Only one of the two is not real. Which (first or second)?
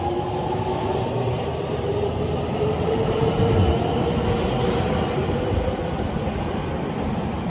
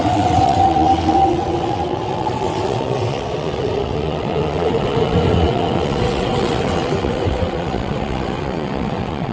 second